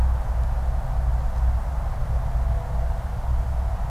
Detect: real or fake real